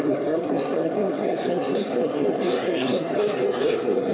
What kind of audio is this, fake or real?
fake